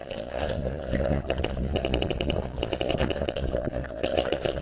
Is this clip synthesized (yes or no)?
yes